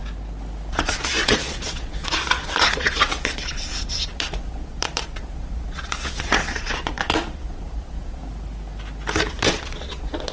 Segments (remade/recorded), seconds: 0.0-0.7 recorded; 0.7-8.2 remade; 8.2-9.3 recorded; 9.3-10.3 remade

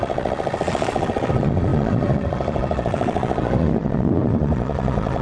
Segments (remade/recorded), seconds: 0.0-5.2 remade

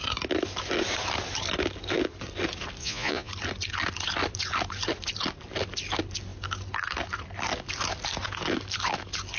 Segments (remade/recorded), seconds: 0.0-2.8 recorded; 2.8-3.3 remade; 3.3-9.4 recorded

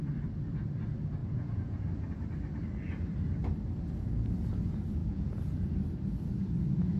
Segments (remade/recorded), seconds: 0.0-1.2 recorded; 1.2-2.1 remade; 2.1-5.0 recorded; 5.0-5.7 remade; 5.7-7.0 recorded